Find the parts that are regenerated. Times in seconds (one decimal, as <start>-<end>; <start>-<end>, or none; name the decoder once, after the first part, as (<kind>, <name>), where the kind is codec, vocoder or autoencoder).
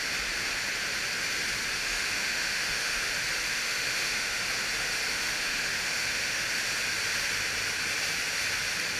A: 1.7-3.1 (autoencoder, DAC-VAE); 3.5-4.4; 5.1-6.4